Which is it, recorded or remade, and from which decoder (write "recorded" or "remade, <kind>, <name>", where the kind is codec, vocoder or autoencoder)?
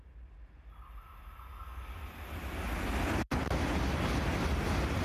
recorded